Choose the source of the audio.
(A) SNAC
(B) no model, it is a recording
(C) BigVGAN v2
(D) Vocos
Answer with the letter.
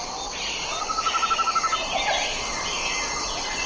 B